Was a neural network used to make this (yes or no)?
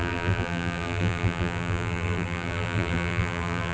yes